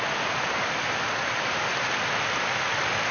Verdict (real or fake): real